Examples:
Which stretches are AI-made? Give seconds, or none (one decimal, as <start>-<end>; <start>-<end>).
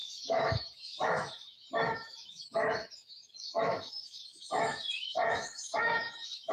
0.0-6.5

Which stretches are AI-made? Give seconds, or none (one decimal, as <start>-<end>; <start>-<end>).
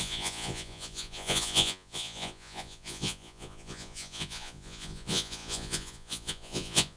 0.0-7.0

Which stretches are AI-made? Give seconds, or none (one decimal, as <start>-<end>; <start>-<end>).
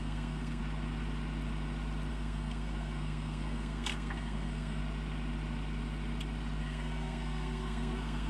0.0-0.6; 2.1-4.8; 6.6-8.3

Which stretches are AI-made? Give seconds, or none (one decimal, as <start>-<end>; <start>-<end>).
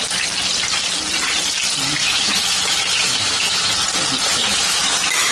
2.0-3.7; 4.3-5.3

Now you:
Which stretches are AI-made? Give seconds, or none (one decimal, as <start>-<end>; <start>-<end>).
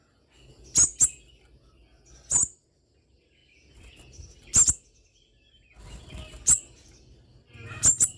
none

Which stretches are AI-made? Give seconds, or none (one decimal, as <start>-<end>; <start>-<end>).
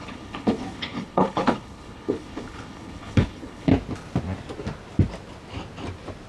0.0-3.7